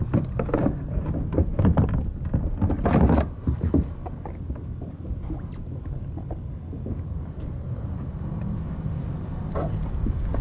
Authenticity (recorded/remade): recorded